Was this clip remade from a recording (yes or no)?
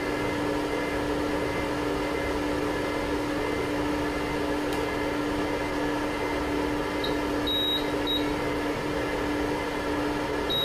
no